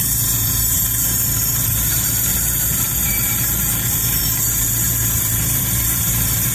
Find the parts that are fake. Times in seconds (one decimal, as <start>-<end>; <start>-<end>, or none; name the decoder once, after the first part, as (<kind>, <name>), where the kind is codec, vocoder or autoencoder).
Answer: 0.0-6.5 (vocoder, BigVGAN v2)

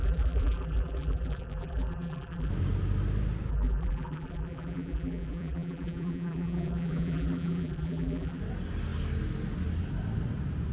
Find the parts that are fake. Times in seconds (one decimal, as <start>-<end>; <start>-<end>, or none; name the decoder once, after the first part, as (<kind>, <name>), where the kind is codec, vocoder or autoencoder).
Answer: 0.0-2.5 (vocoder, BigVGAN v2); 3.5-8.4

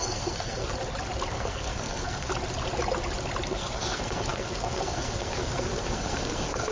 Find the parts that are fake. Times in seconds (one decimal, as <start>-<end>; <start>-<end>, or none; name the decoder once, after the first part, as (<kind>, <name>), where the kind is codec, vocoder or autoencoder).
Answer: 0.0-0.7 (codec, SNAC); 1.3-2.3; 3.5-6.7

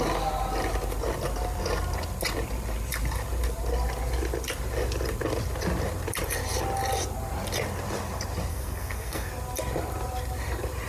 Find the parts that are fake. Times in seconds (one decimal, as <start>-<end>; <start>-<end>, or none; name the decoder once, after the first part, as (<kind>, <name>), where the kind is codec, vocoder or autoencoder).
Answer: 8.5-9.3 (codec, SNAC)

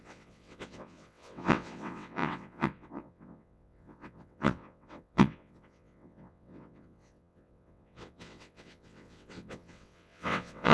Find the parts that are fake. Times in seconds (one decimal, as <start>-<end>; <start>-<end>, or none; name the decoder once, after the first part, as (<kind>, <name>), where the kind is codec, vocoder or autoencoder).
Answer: 0.0-10.7 (vocoder, WaveNeXt)

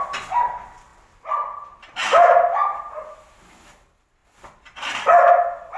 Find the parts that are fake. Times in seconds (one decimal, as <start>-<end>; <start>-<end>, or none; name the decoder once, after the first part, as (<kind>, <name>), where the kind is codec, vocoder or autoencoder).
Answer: none